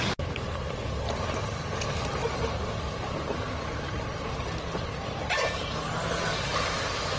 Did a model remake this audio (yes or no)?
no